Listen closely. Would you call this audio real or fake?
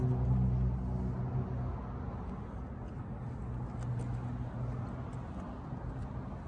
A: real